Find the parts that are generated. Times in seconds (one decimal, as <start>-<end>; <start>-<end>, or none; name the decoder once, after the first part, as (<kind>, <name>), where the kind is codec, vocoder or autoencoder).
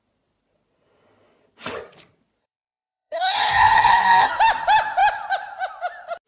2.4-4.3 (codec, SNAC)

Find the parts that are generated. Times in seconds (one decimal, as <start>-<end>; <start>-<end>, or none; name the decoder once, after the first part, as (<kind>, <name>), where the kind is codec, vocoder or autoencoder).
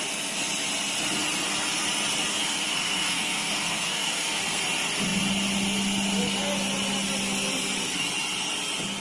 2.3-4.6 (codec, SNAC)